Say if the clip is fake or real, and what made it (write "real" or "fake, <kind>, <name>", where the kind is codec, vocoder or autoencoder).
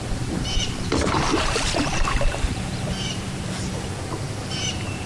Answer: fake, vocoder, BigVGAN v2